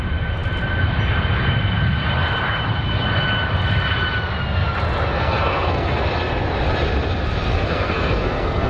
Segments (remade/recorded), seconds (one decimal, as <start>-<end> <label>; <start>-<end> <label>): 0.0-5.1 recorded; 5.1-6.0 remade; 6.0-7.5 recorded; 7.5-8.7 remade